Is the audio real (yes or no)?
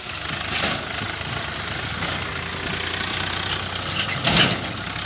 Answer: yes